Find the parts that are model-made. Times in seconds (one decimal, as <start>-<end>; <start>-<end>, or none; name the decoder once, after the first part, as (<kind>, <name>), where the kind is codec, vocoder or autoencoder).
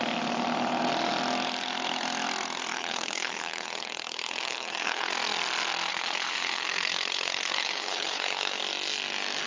2.7-5.1 (codec, HILCodec); 5.9-8.6